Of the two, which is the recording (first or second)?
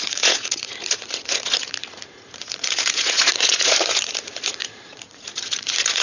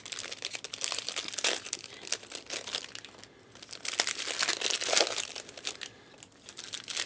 second